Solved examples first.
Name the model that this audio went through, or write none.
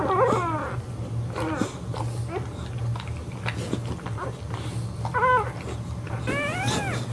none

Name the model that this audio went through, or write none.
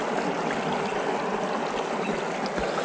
none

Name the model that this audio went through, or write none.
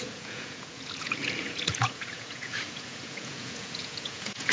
vocoder, Vocos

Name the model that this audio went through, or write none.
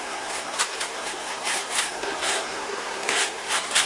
codec, SNAC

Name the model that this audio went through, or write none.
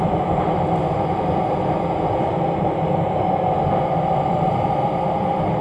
vocoder, BigVGAN v2